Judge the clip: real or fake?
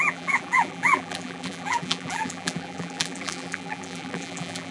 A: fake